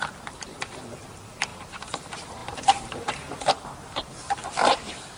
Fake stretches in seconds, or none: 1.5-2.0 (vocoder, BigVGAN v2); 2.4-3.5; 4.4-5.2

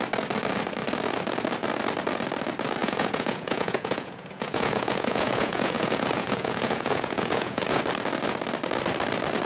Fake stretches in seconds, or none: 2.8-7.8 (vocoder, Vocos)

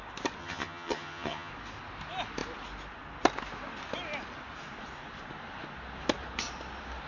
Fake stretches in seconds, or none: 0.4-1.5 (vocoder, HiFi-GAN)

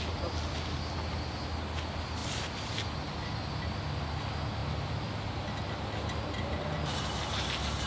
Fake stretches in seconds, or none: none

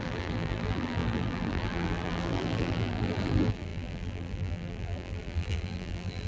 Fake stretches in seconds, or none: 0.0-6.3 (vocoder, BigVGAN v2)

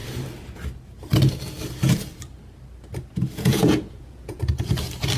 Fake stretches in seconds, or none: 3.5-4.4 (vocoder, Vocos)